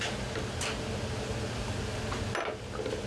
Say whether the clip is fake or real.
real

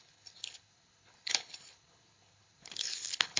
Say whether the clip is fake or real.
fake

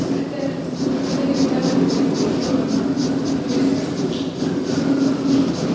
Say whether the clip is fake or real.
real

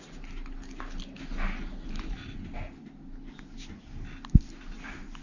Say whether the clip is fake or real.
real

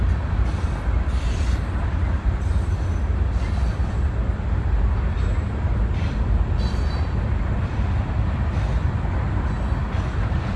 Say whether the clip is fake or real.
real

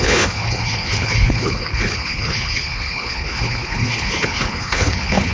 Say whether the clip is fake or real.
fake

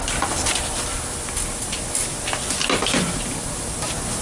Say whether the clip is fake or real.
real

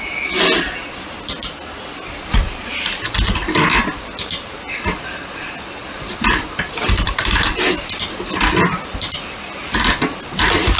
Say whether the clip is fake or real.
real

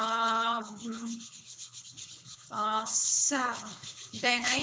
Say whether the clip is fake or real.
fake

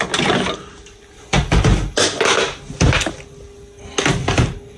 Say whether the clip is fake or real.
real